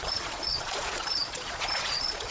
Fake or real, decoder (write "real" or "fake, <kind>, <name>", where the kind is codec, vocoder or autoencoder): fake, vocoder, Vocos